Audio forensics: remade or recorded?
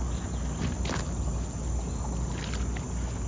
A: recorded